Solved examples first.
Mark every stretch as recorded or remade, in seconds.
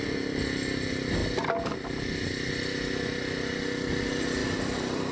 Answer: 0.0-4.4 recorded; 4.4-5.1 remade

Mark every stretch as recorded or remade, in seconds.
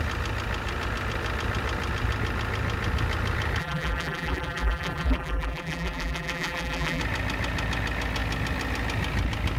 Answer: 0.0-3.6 recorded; 3.6-7.0 remade; 7.0-9.6 recorded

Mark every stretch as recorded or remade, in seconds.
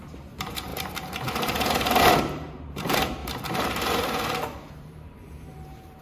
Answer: 0.0-3.2 remade; 3.2-4.7 recorded; 4.7-6.0 remade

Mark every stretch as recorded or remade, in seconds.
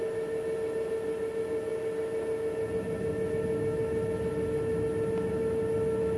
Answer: 0.0-1.7 remade; 1.7-5.3 recorded; 5.3-6.2 remade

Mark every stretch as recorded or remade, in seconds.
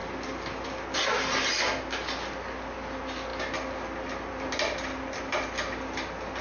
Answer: 0.0-6.4 recorded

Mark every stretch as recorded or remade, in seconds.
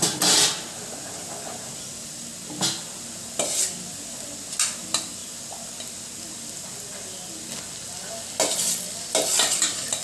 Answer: 0.0-5.2 recorded; 5.2-5.7 remade; 5.7-10.0 recorded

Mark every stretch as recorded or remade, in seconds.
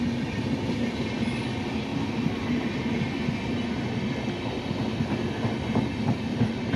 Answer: 0.0-6.8 recorded